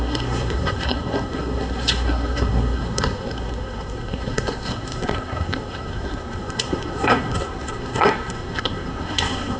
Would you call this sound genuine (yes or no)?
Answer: no